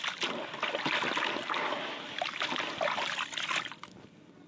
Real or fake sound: real